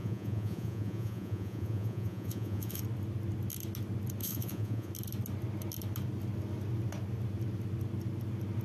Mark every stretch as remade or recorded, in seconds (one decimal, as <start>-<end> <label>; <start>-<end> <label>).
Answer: 0.0-2.8 remade; 2.8-4.2 recorded; 4.2-4.9 remade; 4.9-8.6 recorded